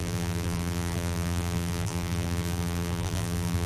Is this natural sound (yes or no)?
no